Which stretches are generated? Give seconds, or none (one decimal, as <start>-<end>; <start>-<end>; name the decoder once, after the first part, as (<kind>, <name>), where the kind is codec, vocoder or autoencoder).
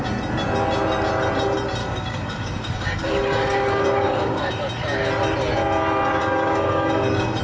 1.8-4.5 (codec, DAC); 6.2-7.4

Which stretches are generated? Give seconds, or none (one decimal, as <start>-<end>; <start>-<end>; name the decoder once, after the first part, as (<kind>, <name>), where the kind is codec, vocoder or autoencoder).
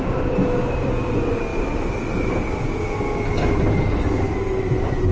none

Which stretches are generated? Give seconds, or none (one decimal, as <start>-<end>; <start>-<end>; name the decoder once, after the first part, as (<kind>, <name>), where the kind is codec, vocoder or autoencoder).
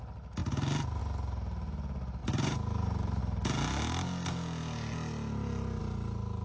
2.2-3.2 (vocoder, BigVGAN v2)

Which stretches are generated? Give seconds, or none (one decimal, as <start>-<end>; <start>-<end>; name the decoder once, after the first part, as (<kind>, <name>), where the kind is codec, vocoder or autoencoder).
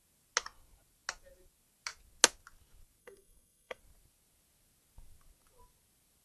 3.0-3.8 (codec, SNAC)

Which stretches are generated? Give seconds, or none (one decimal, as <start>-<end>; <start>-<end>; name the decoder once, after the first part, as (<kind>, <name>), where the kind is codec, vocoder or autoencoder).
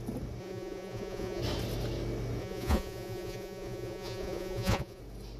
0.4-1.4 (vocoder, Vocos); 2.4-5.0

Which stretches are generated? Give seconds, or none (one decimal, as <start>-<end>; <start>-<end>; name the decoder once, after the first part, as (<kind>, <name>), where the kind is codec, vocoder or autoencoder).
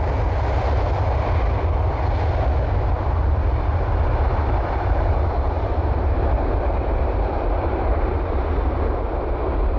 3.7-8.3 (vocoder, BigVGAN v2)